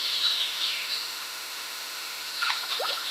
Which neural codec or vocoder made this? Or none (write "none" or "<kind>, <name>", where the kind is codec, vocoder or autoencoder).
autoencoder, DAC-VAE